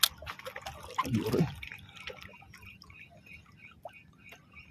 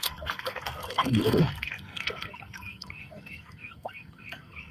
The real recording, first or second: first